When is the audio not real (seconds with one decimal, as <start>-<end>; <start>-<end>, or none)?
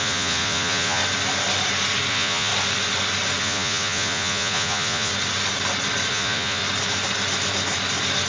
0.0-1.0; 2.1-2.5; 3.4-5.1; 6.1-6.6